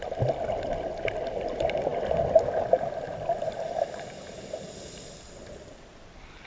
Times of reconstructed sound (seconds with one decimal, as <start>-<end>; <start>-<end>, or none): none